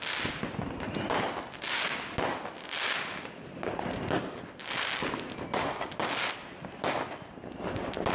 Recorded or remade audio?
recorded